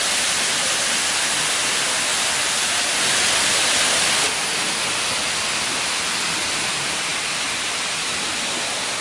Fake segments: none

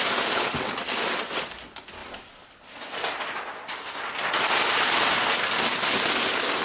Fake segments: 0.0-6.6

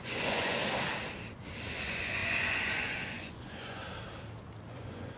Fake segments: 0.0-0.6; 1.8-3.8; 4.7-5.2